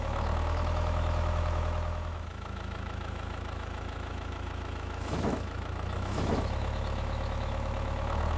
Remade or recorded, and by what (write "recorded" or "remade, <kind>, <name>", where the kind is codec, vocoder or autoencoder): remade, autoencoder, DAC-VAE